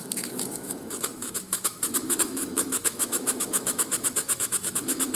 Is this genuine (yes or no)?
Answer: no